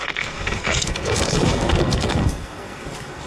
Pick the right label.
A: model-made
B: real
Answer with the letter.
A